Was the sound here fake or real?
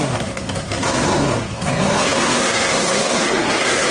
fake